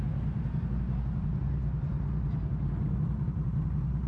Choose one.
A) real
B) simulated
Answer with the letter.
A